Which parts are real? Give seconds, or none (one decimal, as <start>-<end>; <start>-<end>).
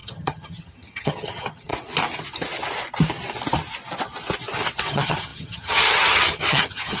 1.7-4.8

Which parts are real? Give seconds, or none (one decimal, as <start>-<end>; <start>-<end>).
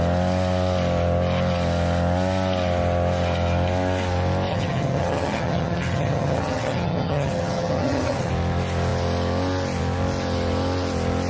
0.0-4.5; 8.3-11.3